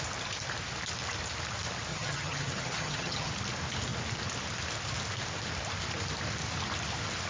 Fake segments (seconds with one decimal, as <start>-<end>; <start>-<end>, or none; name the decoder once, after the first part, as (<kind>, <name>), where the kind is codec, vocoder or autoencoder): 1.9-3.3 (vocoder, HiFi-GAN)

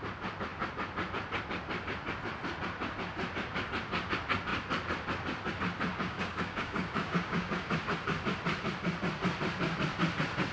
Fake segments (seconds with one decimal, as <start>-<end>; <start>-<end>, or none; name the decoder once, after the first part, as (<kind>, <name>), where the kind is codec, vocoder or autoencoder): 5.9-7.7 (codec, DAC)

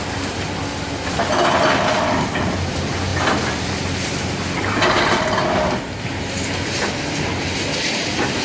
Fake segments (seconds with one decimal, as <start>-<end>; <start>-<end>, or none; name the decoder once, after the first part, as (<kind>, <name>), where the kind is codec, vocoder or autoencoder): none

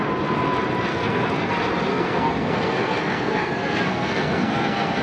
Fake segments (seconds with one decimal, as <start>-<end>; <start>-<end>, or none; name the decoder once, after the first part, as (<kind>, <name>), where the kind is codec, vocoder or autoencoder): 0.9-1.5 (codec, SNAC); 1.9-5.0

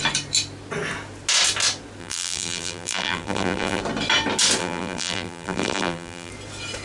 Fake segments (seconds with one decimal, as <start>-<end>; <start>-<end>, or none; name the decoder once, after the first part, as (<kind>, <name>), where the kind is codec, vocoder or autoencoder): 2.0-3.8 (vocoder, BigVGAN v2); 4.6-6.3

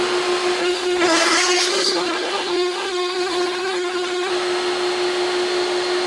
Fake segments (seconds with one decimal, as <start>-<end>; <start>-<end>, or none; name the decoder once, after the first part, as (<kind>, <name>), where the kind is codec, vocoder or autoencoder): 0.6-4.3 (codec, SNAC)

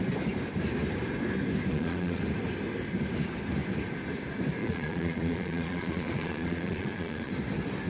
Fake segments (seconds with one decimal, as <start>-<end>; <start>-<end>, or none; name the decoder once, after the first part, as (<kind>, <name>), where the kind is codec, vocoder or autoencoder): 1.7-2.2 (vocoder, Vocos); 4.6-7.3